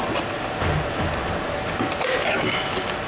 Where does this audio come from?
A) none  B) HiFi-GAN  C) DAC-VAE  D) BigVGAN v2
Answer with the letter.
A